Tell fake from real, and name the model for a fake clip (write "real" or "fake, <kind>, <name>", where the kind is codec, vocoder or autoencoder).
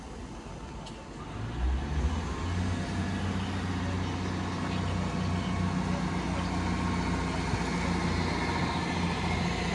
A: real